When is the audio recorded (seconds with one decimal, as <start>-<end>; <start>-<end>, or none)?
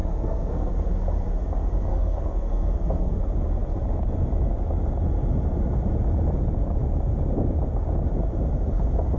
0.7-1.9; 3.1-9.2